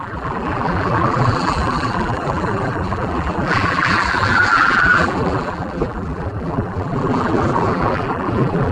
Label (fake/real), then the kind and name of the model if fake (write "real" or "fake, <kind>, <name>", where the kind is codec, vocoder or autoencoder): fake, vocoder, BigVGAN v2